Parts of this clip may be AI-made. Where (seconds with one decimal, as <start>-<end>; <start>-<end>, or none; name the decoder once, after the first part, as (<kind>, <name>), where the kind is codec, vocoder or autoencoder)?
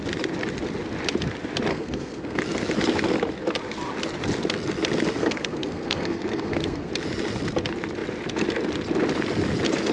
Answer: 1.7-2.4 (codec, SNAC); 5.2-6.9